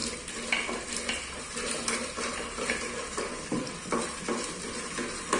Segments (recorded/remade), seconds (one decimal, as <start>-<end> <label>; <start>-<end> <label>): 0.0-5.4 recorded